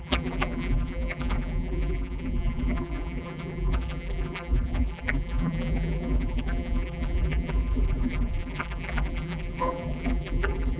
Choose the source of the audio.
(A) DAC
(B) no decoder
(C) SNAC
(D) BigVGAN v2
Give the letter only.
D